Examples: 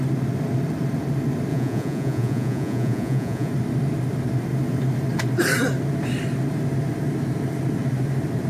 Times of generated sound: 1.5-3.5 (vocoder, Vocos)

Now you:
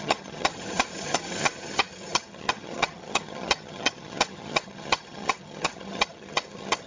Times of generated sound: 0.0-6.9 (vocoder, HiFi-GAN)

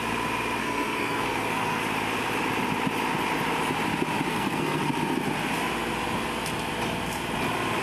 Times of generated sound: 0.6-1.8 (codec, SNAC); 4.3-4.9

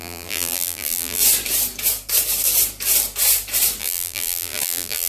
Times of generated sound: 0.0-1.2 (vocoder, BigVGAN v2); 3.8-5.1

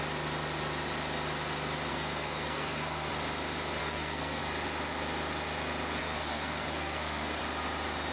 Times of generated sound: 1.9-3.1 (codec, SNAC); 3.8-4.4; 6.0-7.4

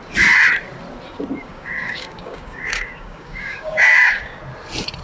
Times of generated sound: 1.4-4.4 (codec, DAC)

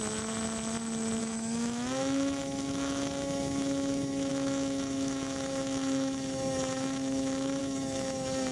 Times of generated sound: 1.2-8.5 (autoencoder, DAC-VAE)